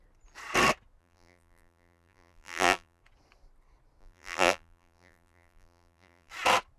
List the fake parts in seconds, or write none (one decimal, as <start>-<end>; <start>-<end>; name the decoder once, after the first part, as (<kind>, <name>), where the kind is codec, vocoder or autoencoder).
1.0-3.0 (vocoder, BigVGAN v2); 4.0-6.3